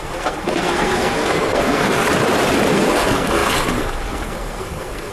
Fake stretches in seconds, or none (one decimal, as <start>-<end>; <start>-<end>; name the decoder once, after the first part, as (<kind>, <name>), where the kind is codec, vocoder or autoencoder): 0.0-2.0 (codec, SNAC); 2.7-5.1